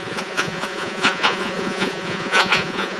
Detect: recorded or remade remade